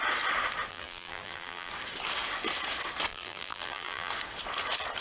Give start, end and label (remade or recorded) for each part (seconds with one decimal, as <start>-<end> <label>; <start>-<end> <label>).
0.0-0.7 recorded; 0.7-1.7 remade; 1.7-3.1 recorded; 3.1-4.1 remade; 4.1-5.0 recorded